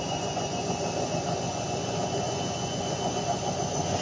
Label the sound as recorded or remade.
remade